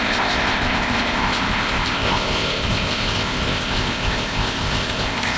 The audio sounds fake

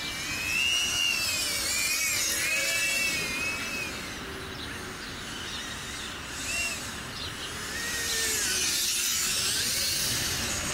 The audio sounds real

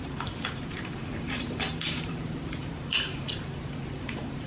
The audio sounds fake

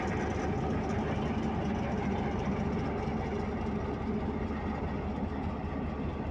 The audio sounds real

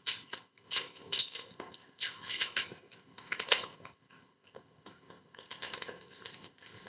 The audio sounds fake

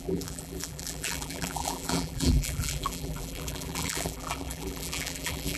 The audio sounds fake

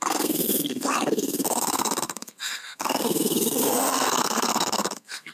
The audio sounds fake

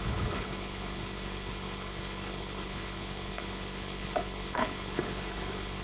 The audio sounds fake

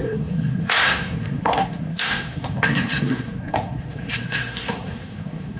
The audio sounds fake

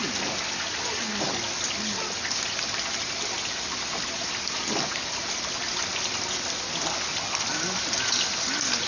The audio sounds real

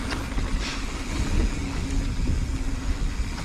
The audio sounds real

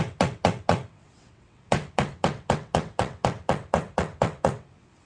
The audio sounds fake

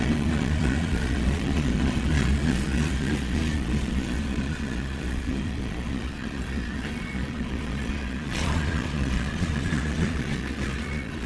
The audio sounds fake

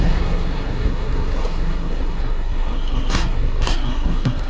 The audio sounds fake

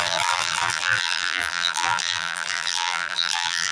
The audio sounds fake